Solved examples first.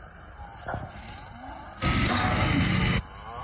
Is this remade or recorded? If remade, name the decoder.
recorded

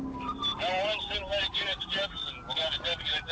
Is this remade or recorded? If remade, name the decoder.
recorded